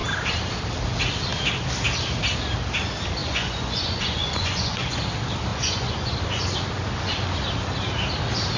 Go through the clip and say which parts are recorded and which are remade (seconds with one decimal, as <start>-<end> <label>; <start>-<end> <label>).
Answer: 0.0-3.2 recorded; 3.2-5.0 remade; 5.0-5.5 recorded; 5.5-6.1 remade; 6.1-8.6 recorded